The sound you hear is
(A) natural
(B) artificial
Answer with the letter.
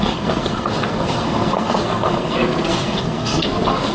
B